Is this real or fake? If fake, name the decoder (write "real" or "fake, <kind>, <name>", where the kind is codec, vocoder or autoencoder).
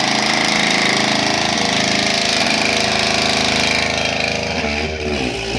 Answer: real